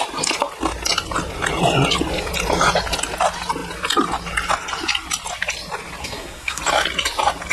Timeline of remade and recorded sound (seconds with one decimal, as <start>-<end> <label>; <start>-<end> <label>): 0.0-6.0 recorded; 6.0-6.6 remade; 6.6-7.5 recorded